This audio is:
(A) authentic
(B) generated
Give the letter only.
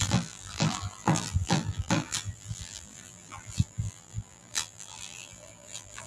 B